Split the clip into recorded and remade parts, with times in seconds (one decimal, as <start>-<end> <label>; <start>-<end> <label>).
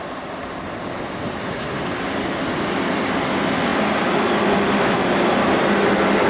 0.0-6.3 recorded